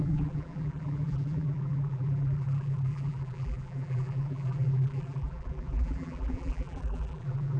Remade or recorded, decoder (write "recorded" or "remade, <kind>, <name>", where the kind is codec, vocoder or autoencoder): remade, vocoder, BigVGAN v2